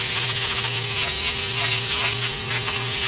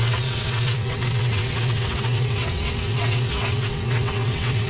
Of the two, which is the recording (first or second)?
first